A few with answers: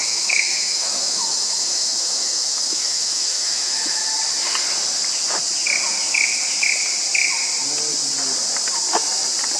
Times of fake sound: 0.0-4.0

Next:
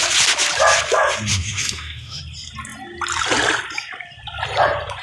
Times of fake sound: 1.3-2.2

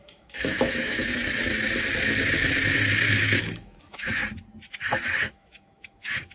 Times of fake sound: 0.0-1.1; 3.1-4.2; 5.3-6.3

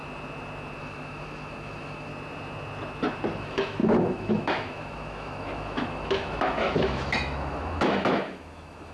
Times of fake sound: 0.8-2.1; 3.4-8.9

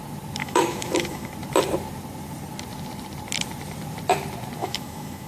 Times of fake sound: 0.4-1.3; 4.6-5.3

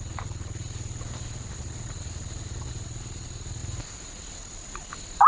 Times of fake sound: none